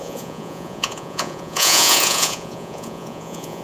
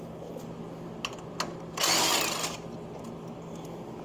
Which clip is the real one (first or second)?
second